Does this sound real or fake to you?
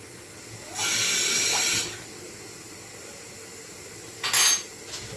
real